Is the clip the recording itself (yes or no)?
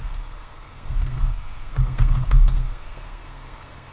no